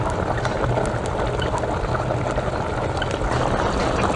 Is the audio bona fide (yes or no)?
yes